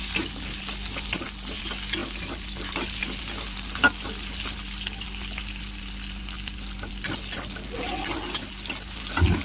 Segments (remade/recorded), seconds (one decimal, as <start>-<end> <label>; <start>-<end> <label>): 0.0-9.4 recorded